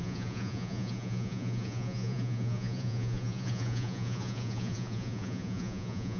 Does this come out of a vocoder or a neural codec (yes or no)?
yes